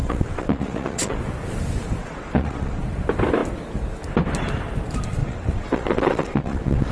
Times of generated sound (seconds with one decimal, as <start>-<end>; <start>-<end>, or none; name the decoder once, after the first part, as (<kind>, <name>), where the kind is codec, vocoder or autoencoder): 0.0-1.2 (vocoder, WaveNeXt); 2.0-2.8; 5.2-6.9